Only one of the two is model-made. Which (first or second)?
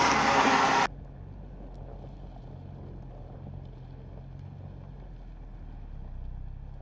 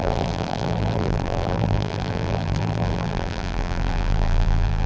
second